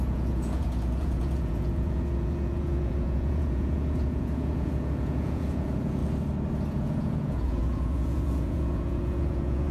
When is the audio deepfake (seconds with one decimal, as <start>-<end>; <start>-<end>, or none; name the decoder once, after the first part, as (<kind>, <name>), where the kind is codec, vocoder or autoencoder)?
0.0-6.0 (vocoder, Vocos); 6.7-9.7